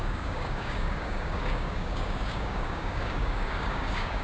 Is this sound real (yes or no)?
no